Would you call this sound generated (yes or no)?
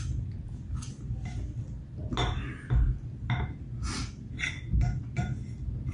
no